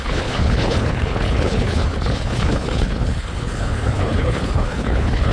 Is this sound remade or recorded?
remade